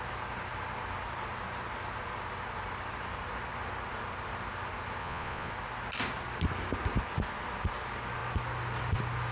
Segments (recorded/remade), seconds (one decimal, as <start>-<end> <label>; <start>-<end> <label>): 0.0-5.0 recorded; 5.0-5.5 remade; 5.5-9.3 recorded